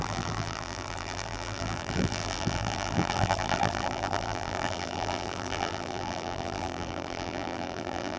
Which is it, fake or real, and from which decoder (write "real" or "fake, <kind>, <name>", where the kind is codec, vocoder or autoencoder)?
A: fake, vocoder, BigVGAN v2